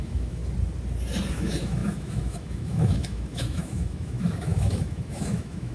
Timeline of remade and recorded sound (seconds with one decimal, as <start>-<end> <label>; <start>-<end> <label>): 0.0-0.4 remade; 0.4-1.3 recorded; 1.3-5.7 remade